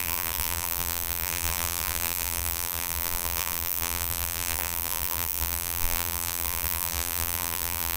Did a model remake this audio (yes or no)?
yes